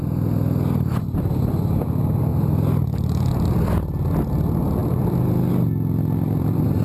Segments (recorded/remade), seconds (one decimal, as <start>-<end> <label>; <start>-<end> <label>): 0.0-6.8 recorded